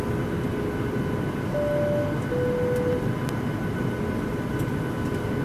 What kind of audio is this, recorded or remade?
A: recorded